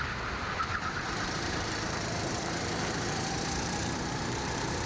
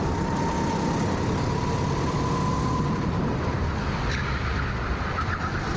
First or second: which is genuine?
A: second